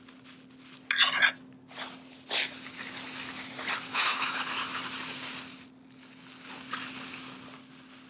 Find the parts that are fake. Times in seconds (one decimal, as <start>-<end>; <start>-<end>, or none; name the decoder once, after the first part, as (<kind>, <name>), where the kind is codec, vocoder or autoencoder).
3.9-4.4 (autoencoder, DAC-VAE)